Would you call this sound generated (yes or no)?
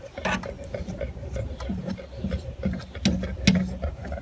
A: no